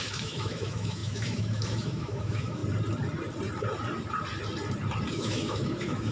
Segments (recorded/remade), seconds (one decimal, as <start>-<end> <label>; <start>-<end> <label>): 0.0-2.6 remade; 2.6-5.1 recorded; 5.1-6.1 remade